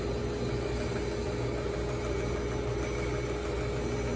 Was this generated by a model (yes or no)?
no